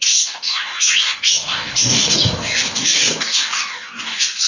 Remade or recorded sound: remade